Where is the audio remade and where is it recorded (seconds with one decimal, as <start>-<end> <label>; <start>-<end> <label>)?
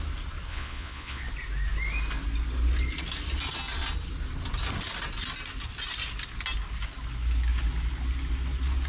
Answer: 0.0-0.5 recorded; 0.5-1.2 remade; 1.2-8.9 recorded